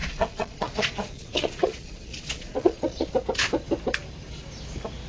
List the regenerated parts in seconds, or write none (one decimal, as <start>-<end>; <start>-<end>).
0.0-3.1